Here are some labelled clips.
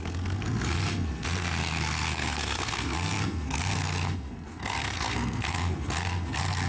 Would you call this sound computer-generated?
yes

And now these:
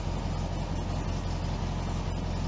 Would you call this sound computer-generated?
no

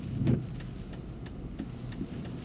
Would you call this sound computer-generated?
no